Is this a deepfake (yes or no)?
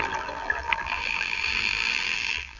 yes